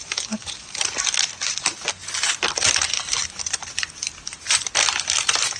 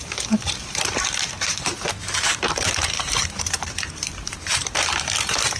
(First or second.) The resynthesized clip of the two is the second